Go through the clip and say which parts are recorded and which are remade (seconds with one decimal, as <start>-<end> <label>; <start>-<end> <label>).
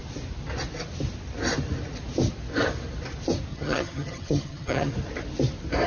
0.0-3.5 recorded; 3.5-4.9 remade; 4.9-5.9 recorded